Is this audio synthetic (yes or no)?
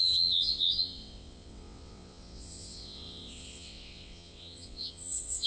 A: yes